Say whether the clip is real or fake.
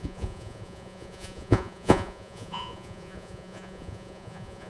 fake